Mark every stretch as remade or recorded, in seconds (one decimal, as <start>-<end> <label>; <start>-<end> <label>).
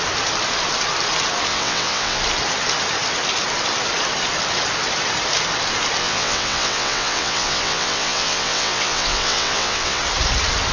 0.0-1.5 recorded; 1.5-2.2 remade; 2.2-6.0 recorded; 6.0-10.0 remade; 10.0-10.7 recorded